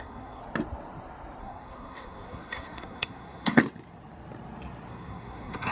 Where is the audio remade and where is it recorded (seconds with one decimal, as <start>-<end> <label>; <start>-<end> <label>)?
0.0-0.4 remade; 0.4-1.4 recorded; 1.4-3.6 remade; 3.6-4.9 recorded; 4.9-5.7 remade